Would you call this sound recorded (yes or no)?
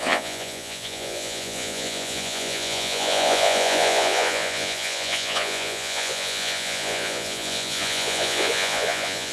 no